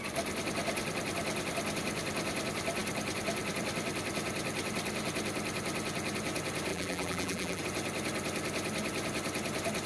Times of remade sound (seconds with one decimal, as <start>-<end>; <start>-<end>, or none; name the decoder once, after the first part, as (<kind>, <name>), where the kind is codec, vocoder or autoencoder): 6.7-7.6 (vocoder, BigVGAN v2)